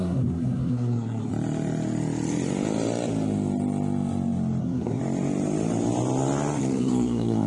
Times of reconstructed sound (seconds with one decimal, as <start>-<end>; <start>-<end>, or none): 0.0-1.3; 4.6-5.0; 6.6-7.5